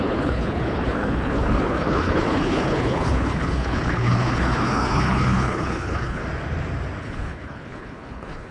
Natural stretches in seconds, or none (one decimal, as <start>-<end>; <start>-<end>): 6.2-7.0